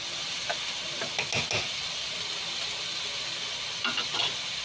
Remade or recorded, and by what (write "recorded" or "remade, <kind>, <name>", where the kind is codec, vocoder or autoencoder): recorded